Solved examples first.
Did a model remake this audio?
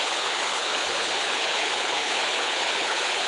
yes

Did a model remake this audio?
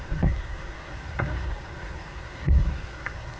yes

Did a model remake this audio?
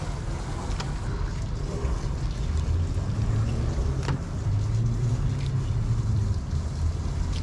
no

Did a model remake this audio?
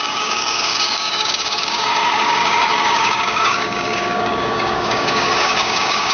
yes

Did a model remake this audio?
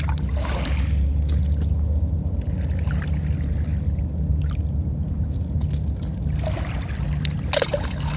no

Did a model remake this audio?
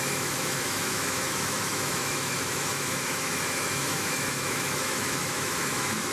yes